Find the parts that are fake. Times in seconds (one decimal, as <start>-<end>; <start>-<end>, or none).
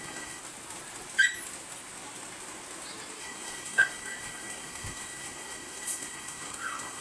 0.0-0.4; 3.2-7.0